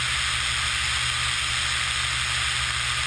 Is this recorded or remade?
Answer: recorded